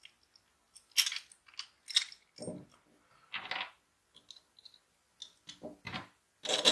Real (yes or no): yes